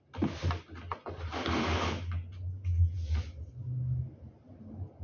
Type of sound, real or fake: real